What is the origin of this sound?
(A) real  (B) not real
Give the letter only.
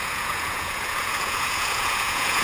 B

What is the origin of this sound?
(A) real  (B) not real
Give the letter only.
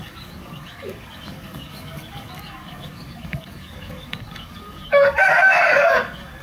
B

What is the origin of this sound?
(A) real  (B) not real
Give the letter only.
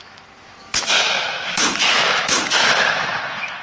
B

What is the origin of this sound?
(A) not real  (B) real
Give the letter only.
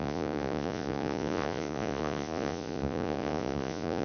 A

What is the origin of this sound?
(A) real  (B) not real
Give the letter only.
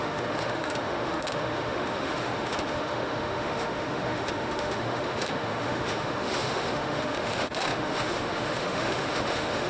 B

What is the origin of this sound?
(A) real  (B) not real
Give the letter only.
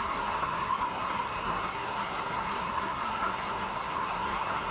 B